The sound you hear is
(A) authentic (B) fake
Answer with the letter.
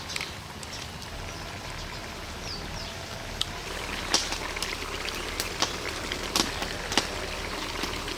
B